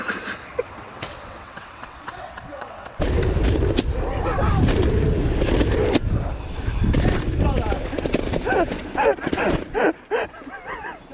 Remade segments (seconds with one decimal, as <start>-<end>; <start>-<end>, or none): 0.5-3.0